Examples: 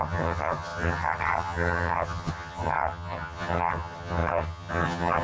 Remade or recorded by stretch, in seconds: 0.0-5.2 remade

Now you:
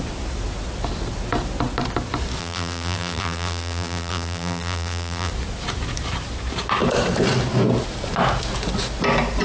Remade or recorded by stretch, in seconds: 0.0-2.4 recorded; 2.4-5.3 remade; 5.3-9.4 recorded

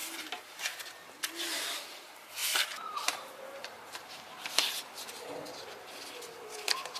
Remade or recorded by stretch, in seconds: 0.0-0.6 remade; 0.6-2.4 recorded; 2.4-5.7 remade; 5.7-7.0 recorded

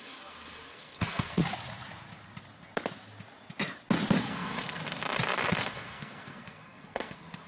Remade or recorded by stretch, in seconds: 0.0-1.4 remade; 1.4-4.2 recorded; 4.2-4.8 remade; 4.8-5.7 recorded; 5.7-7.5 remade

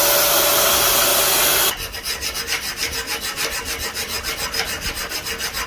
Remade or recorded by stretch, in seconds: 0.0-5.7 recorded

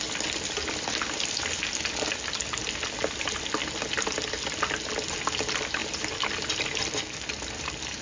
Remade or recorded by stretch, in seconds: 0.0-8.0 recorded

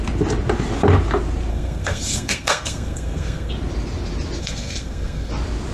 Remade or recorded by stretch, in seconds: 0.0-1.5 recorded; 1.5-3.5 remade; 3.5-4.4 recorded; 4.4-5.3 remade; 5.3-5.7 recorded